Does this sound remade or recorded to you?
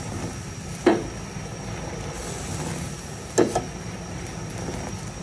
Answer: recorded